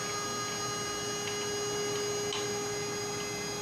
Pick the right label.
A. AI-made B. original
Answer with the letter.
B